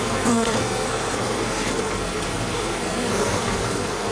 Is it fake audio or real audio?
fake